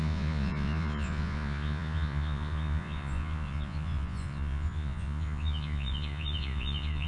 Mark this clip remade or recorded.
remade